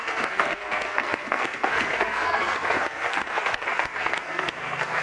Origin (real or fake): fake